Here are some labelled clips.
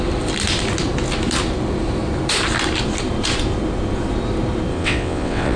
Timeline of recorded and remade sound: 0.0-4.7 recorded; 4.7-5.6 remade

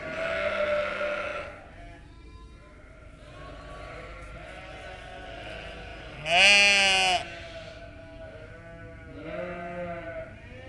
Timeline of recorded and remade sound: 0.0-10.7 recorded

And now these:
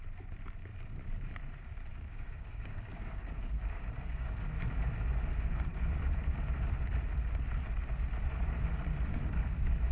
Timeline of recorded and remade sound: 0.0-1.9 recorded; 1.9-4.4 remade; 4.4-9.9 recorded

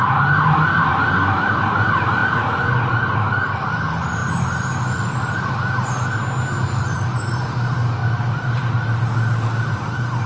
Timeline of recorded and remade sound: 0.0-10.3 recorded